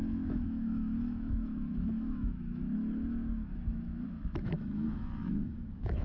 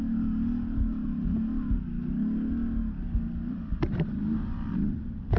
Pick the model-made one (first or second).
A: first